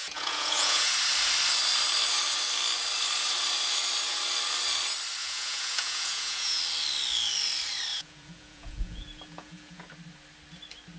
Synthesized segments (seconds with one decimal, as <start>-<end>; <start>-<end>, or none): 0.0-0.9; 5.2-6.6; 7.9-9.9